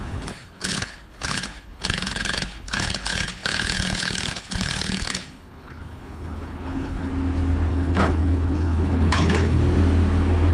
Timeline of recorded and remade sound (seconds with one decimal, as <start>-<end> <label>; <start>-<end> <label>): 0.0-7.1 remade; 7.1-7.7 recorded; 7.7-9.6 remade; 9.6-10.5 recorded